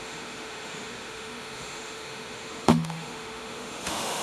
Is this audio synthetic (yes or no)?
yes